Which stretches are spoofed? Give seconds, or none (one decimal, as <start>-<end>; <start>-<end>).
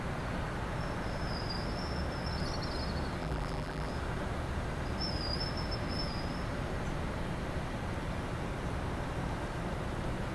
3.2-3.9